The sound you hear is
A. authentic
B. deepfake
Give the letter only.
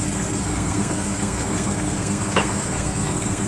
B